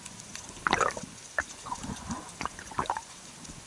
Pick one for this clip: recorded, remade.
remade